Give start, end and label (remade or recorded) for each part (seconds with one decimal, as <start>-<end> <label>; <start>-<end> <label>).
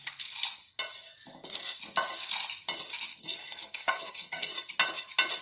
0.0-3.2 recorded; 3.2-4.5 remade; 4.5-5.4 recorded